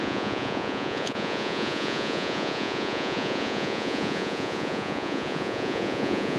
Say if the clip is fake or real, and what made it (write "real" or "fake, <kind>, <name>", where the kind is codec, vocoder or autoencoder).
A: fake, vocoder, Vocos